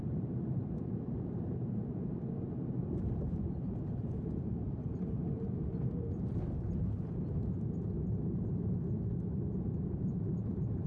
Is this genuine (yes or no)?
no